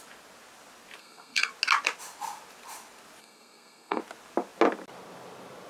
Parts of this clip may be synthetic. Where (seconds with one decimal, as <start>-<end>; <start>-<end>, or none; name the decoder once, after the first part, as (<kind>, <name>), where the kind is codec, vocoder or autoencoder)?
1.0-1.5 (codec, SNAC); 3.2-4.0

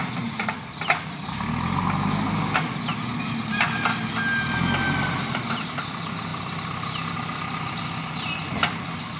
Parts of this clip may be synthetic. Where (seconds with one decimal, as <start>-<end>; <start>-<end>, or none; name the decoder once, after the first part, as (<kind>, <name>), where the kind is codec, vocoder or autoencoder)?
none